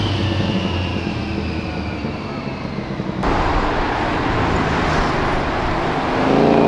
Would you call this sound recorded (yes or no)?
yes